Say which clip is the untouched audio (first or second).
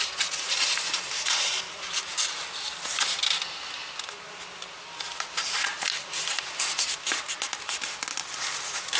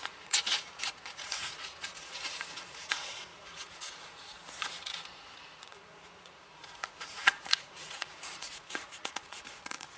first